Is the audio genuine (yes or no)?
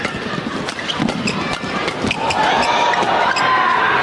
yes